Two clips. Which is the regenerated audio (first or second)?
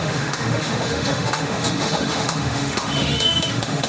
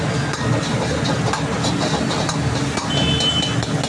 first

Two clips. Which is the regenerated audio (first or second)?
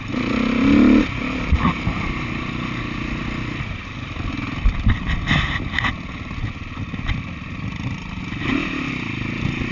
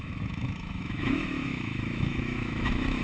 second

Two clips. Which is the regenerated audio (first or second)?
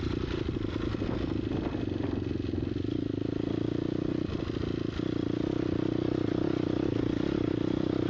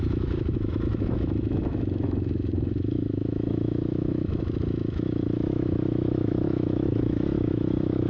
second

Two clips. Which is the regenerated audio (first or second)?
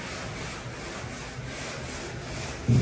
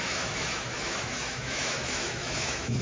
second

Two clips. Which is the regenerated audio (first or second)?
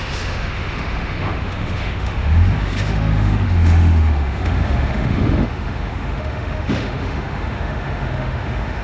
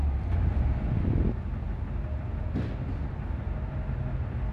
first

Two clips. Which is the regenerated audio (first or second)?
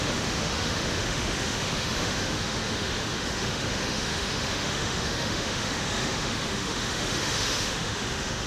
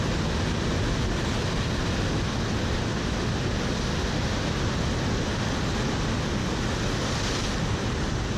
first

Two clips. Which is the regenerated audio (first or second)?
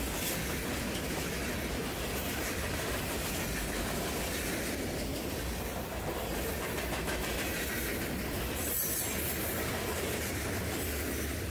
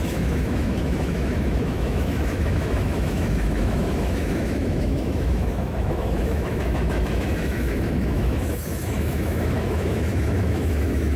second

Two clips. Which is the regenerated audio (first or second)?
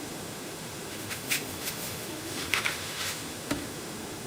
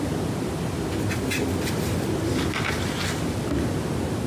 first